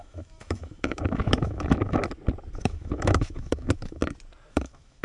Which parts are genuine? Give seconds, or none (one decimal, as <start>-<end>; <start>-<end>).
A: 2.0-2.6; 4.0-4.5